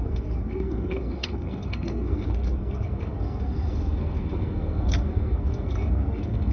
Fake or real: fake